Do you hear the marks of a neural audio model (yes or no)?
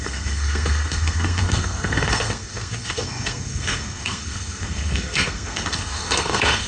yes